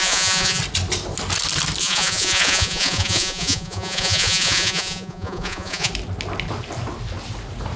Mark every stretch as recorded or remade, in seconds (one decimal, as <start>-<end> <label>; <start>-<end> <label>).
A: 0.0-0.6 remade; 0.6-1.8 recorded; 1.8-5.9 remade; 5.9-7.8 recorded